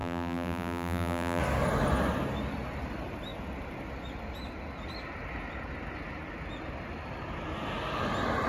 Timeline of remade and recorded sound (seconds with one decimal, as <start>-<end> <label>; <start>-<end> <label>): 0.0-1.4 remade; 1.4-8.5 recorded